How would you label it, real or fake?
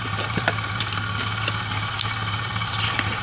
fake